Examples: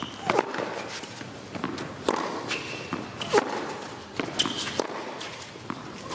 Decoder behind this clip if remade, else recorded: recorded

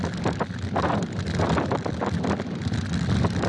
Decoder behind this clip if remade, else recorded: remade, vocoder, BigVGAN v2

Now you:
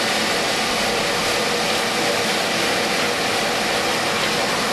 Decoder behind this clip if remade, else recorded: recorded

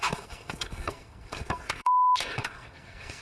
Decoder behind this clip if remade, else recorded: remade, codec, SNAC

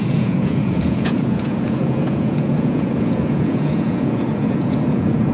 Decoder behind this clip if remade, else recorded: remade, vocoder, Vocos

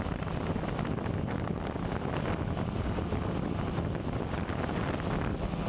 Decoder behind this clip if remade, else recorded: recorded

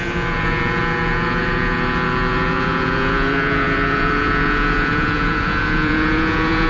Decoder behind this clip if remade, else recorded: remade, vocoder, Vocos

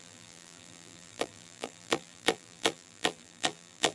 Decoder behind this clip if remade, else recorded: remade, vocoder, BigVGAN v2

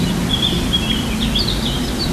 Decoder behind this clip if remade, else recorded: recorded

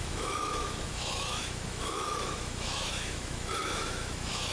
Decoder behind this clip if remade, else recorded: remade, autoencoder, DAC-VAE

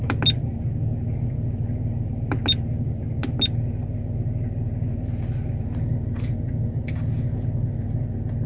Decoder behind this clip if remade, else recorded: recorded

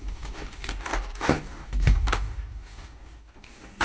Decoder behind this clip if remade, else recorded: remade, codec, DAC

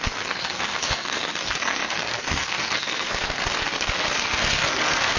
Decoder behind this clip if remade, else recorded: remade, codec, SNAC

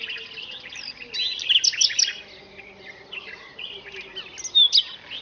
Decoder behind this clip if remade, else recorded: recorded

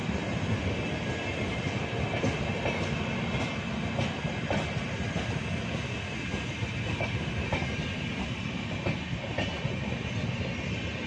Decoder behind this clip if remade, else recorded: recorded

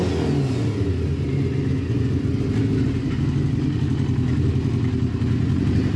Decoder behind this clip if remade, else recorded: recorded